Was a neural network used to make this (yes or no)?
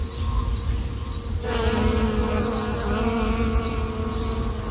no